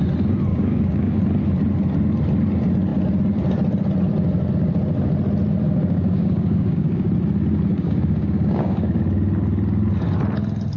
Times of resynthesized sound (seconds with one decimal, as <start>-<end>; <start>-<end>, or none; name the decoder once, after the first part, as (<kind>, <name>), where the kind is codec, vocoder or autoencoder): 0.5-1.2 (codec, DAC); 5.7-7.1; 7.7-9.0